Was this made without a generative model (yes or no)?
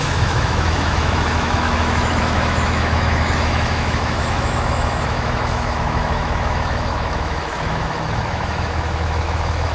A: no